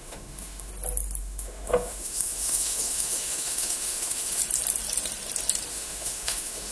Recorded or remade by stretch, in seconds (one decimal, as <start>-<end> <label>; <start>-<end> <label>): 0.0-0.7 remade; 0.7-1.2 recorded; 1.2-4.4 remade; 4.4-5.7 recorded; 5.7-6.7 remade